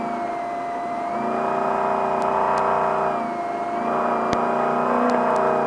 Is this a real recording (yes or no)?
yes